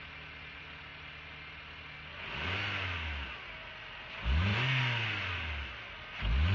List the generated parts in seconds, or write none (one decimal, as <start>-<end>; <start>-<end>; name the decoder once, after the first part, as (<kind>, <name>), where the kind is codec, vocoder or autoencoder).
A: none